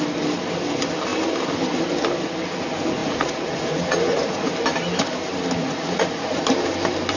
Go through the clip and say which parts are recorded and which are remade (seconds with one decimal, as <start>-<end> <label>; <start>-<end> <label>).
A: 0.0-3.0 recorded; 3.0-4.5 remade; 4.5-5.6 recorded; 5.6-6.4 remade; 6.4-7.2 recorded